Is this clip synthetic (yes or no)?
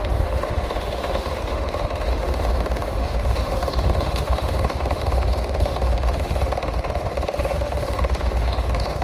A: yes